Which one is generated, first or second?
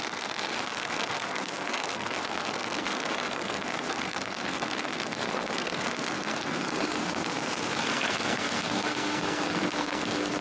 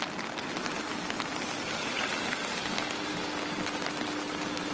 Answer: first